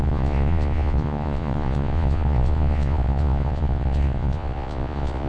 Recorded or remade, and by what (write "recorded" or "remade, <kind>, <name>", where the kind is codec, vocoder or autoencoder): remade, vocoder, Vocos